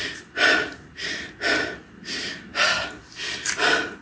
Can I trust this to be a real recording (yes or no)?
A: yes